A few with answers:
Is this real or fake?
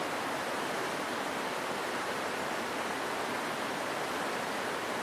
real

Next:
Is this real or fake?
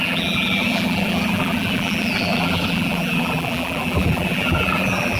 fake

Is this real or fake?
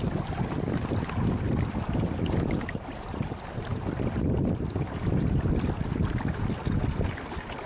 real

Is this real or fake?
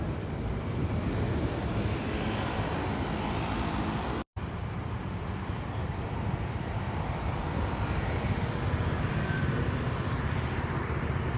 fake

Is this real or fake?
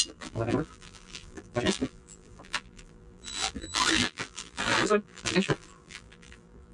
fake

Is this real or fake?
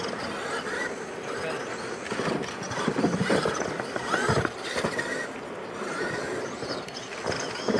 real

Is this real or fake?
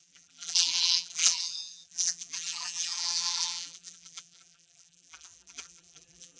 fake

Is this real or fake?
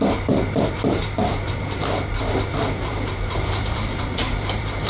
fake